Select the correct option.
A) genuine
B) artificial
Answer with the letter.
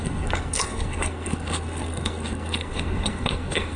B